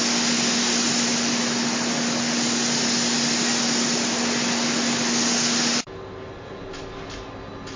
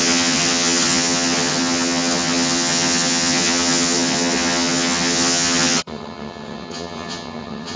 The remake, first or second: second